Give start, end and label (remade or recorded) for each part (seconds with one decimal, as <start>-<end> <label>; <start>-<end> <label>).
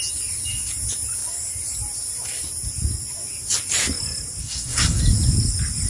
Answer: 0.0-4.4 recorded; 4.4-5.0 remade; 5.0-5.9 recorded